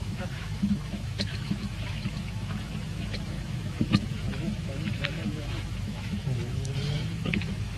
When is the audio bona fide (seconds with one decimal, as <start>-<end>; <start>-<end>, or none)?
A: none